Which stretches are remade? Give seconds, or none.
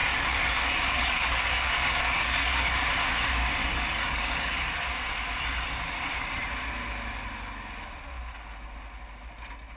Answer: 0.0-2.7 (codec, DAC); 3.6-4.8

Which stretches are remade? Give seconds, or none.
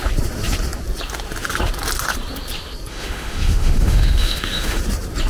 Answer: 2.9-4.8 (autoencoder, DAC-VAE)